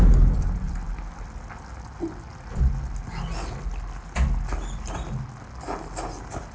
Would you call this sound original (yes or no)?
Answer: yes